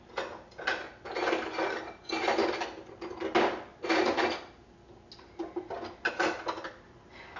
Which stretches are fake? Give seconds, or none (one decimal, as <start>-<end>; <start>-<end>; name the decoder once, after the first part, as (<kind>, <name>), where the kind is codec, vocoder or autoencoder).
none